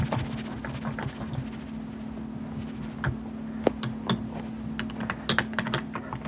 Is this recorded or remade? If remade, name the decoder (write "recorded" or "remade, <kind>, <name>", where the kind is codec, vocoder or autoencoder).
recorded